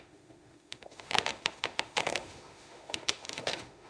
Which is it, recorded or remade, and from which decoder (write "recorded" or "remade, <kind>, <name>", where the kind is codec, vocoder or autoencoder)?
remade, autoencoder, DAC-VAE